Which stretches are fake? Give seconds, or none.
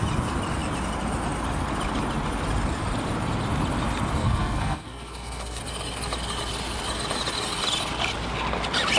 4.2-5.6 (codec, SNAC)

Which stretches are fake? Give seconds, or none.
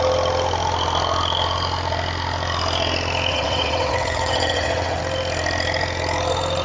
3.3-5.0 (vocoder, WaveNeXt)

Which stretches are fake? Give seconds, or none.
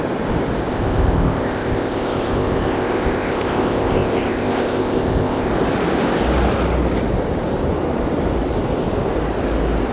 0.7-5.5 (codec, ZipCodec)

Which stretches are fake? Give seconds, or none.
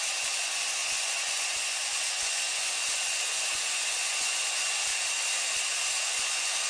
0.0-4.9 (vocoder, Vocos); 5.7-6.7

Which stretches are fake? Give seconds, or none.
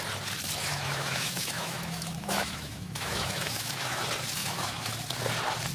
0.6-4.0 (autoencoder, DAC-VAE); 4.4-4.9